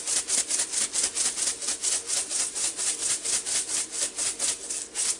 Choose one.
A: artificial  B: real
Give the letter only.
B